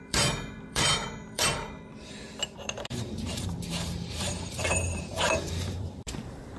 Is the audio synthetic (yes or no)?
yes